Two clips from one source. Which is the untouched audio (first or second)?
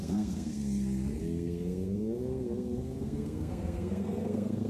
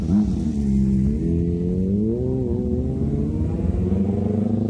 second